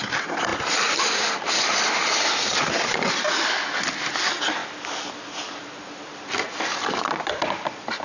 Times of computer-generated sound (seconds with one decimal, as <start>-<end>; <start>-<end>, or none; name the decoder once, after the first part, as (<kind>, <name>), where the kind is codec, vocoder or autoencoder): none